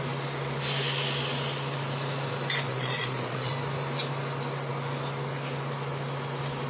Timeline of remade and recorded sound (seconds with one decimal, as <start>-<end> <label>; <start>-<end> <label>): 0.0-2.7 recorded; 2.7-3.5 remade; 3.5-6.7 recorded